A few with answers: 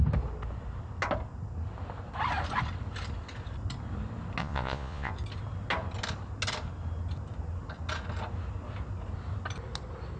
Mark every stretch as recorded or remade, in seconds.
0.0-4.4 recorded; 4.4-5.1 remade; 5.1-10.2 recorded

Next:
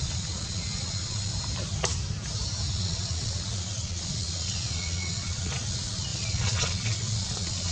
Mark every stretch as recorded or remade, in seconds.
0.0-1.3 remade; 1.3-2.7 recorded; 2.7-7.7 remade

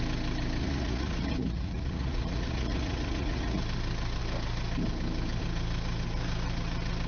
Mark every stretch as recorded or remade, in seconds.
0.0-0.6 recorded; 0.6-3.6 remade; 3.6-7.1 recorded

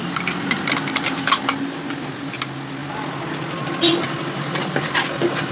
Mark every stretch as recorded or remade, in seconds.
0.0-5.5 recorded

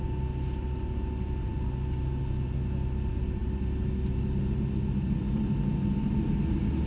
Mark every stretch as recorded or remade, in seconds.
0.0-6.9 recorded

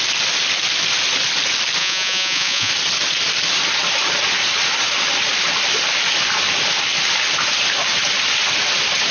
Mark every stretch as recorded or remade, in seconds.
0.0-1.8 recorded; 1.8-2.7 remade; 2.7-9.1 recorded

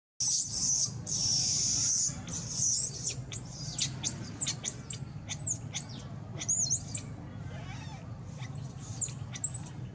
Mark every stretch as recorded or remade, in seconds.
0.0-2.3 recorded; 2.3-3.6 remade; 3.6-9.9 recorded

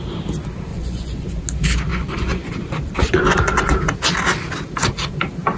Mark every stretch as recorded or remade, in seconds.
0.0-0.7 recorded; 0.7-1.4 remade; 1.4-1.9 recorded; 1.9-2.6 remade; 2.6-3.0 recorded; 3.0-3.7 remade; 3.7-5.6 recorded